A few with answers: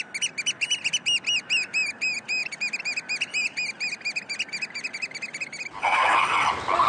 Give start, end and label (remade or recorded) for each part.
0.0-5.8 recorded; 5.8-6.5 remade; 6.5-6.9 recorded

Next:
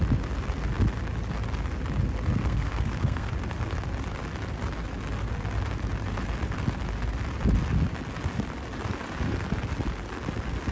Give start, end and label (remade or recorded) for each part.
0.0-2.4 recorded; 2.4-3.3 remade; 3.3-10.7 recorded

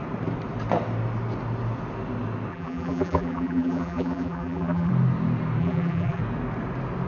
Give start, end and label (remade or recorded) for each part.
0.0-2.5 recorded; 2.5-4.9 remade; 4.9-5.6 recorded; 5.6-6.2 remade; 6.2-7.1 recorded

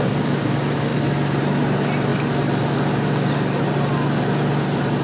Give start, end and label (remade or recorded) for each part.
0.0-5.0 recorded

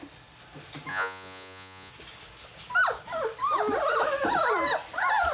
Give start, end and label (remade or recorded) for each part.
0.0-0.9 recorded; 0.9-1.9 remade; 1.9-5.3 recorded

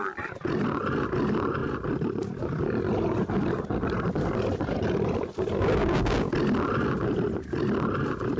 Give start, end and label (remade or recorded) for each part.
0.0-5.8 recorded; 5.8-6.3 remade; 6.3-8.4 recorded